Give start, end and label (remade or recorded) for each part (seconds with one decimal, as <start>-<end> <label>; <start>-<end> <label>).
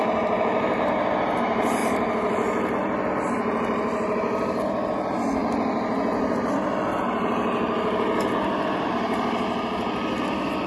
0.0-10.7 recorded